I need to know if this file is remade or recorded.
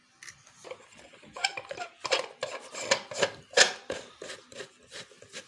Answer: recorded